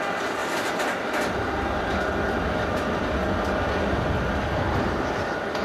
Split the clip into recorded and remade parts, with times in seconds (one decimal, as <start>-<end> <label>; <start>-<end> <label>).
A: 0.0-5.6 recorded